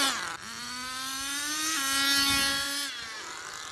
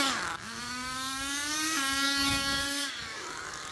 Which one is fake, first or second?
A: second